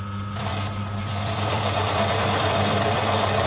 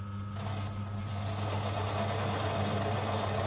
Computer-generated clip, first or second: first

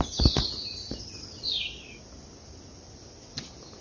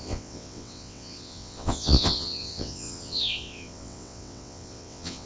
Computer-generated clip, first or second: second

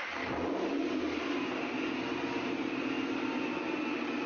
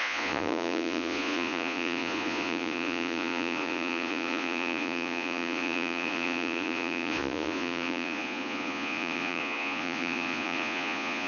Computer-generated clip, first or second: second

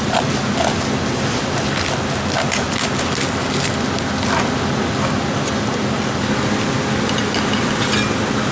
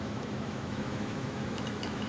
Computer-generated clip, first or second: second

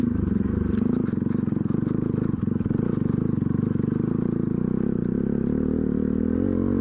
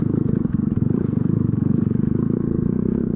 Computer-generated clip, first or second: second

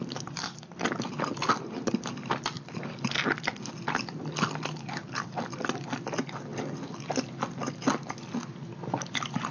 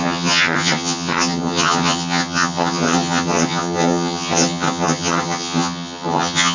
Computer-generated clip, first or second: second